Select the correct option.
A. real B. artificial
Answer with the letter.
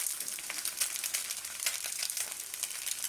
A